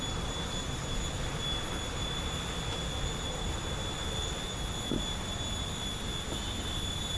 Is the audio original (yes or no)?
yes